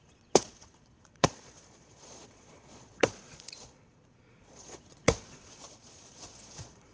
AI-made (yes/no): yes